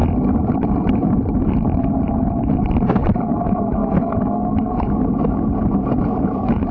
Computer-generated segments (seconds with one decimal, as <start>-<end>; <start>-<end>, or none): 0.7-3.8; 5.8-6.7